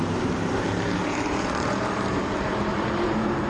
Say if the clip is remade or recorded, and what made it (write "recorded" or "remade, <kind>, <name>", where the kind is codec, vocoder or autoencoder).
remade, vocoder, BigVGAN v2